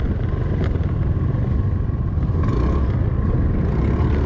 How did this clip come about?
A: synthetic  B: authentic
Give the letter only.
B